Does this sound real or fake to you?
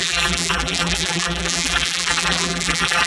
fake